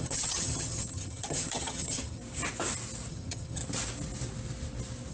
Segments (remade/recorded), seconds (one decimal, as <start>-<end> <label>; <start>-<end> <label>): 0.0-2.2 remade; 2.2-3.1 recorded; 3.1-3.6 remade; 3.6-5.1 recorded